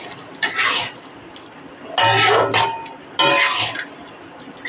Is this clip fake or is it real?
real